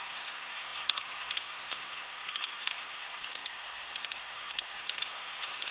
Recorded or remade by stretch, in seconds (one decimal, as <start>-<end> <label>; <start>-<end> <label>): 0.0-5.7 remade

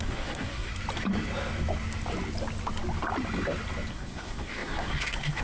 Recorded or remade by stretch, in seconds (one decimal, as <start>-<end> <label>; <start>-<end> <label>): 0.0-0.7 remade; 0.7-3.9 recorded; 3.9-5.4 remade

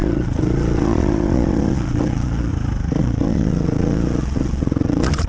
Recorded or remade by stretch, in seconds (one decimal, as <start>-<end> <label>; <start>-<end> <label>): 0.0-2.5 remade; 2.5-3.0 recorded; 3.0-5.3 remade